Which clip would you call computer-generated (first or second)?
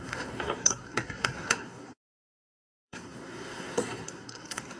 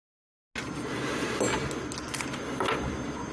first